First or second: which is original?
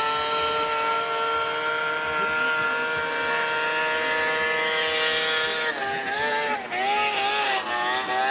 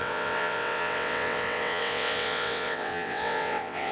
first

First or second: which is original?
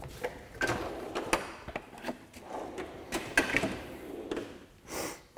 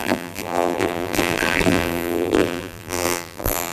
first